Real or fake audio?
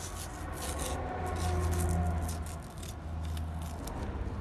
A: real